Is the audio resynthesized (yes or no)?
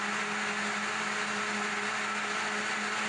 no